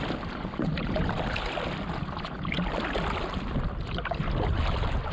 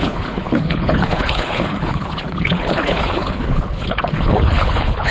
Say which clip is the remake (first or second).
second